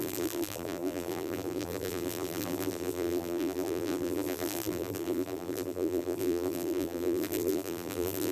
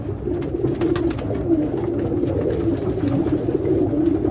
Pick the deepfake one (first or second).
first